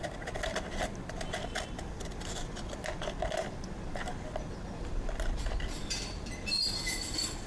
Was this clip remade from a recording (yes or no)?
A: no